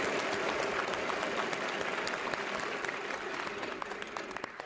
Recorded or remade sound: recorded